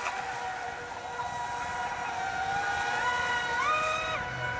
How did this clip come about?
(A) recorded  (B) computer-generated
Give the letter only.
A